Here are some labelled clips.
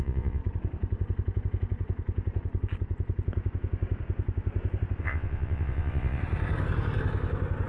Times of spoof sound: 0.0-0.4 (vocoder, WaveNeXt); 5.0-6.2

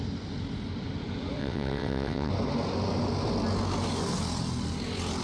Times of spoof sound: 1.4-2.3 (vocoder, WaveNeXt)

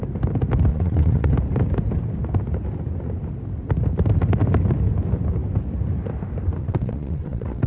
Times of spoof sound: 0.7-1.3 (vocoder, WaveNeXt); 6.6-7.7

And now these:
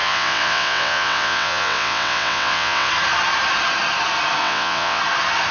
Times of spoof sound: 0.0-2.9 (vocoder, WaveNeXt); 4.4-5.0

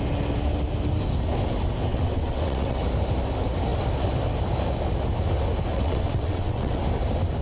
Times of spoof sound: 1.9-2.8 (vocoder, WaveNeXt); 5.7-6.8